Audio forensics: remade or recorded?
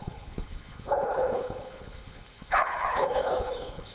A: remade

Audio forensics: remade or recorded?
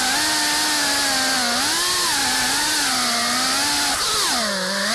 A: recorded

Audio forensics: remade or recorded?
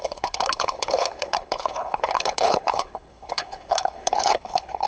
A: remade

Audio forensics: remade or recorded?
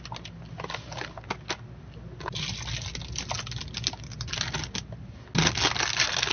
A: recorded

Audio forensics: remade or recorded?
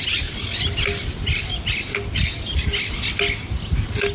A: recorded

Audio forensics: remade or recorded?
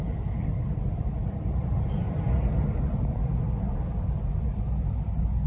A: recorded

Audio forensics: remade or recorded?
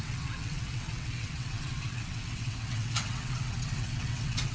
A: remade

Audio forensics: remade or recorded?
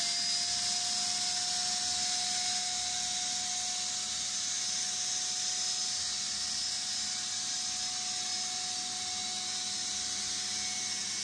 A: recorded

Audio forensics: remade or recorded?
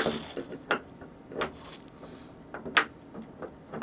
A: recorded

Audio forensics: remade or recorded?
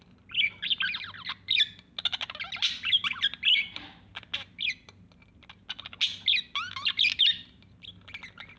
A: recorded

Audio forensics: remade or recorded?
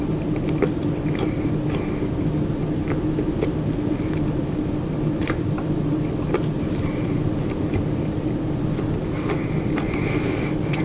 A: recorded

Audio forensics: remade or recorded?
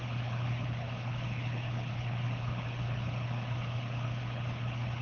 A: remade